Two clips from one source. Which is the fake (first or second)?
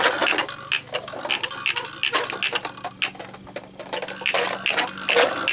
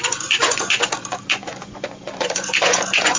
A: second